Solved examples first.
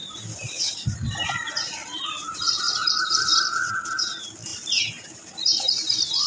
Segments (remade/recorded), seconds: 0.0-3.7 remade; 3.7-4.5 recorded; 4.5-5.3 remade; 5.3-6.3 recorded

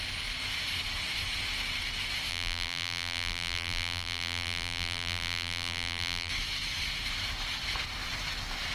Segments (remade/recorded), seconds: 0.0-2.3 recorded; 2.3-6.3 remade; 6.3-8.7 recorded